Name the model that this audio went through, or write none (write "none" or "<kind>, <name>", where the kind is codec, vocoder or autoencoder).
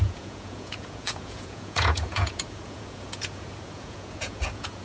vocoder, Vocos